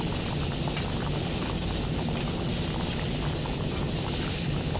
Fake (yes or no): no